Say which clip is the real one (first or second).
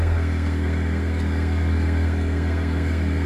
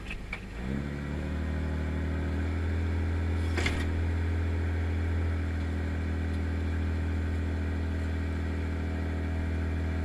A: second